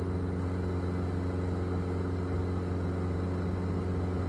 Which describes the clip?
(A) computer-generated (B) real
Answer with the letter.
B